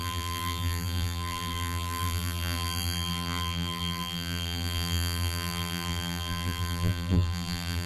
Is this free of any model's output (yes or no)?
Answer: no